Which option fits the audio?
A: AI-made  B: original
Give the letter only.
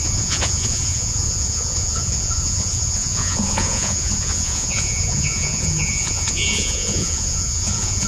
A